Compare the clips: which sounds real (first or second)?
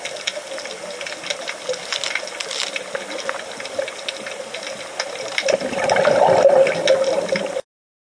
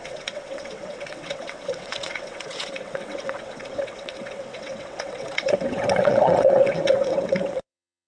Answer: first